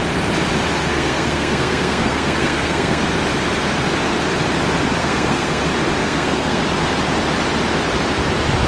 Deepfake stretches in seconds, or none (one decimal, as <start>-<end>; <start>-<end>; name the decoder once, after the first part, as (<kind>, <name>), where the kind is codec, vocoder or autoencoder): 0.9-3.0 (codec, SNAC); 5.0-5.6; 6.0-6.6